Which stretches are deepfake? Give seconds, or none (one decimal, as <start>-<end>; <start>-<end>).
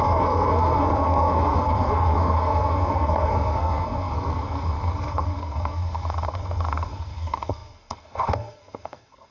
0.0-9.3